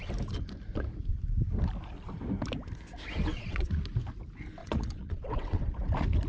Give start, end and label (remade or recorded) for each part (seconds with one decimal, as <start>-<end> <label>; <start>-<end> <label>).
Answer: 0.0-3.3 recorded; 3.3-3.8 remade; 3.8-4.6 recorded; 4.6-5.6 remade; 5.6-6.3 recorded